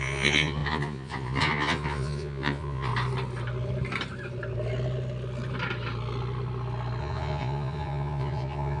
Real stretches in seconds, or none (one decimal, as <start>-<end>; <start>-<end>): 2.9-7.0